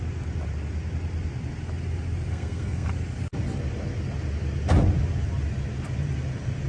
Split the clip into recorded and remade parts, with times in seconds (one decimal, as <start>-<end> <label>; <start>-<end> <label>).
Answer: 0.0-2.3 recorded; 2.3-2.9 remade; 2.9-6.7 recorded